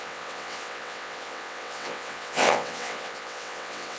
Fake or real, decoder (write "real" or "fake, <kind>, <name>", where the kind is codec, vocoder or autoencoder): fake, vocoder, WaveNeXt